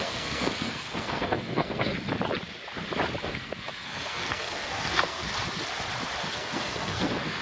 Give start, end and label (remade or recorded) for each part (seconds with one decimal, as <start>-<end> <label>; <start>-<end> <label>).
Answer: 0.0-1.9 remade; 1.9-3.2 recorded; 3.2-5.3 remade; 5.3-6.2 recorded; 6.2-7.4 remade